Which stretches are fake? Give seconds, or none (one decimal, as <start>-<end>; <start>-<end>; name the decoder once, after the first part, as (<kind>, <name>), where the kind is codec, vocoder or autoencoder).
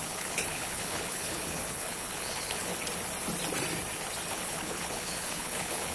0.0-2.7 (codec, HILCodec); 4.3-5.9